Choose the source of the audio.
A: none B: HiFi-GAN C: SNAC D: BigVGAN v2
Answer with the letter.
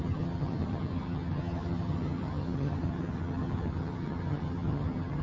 B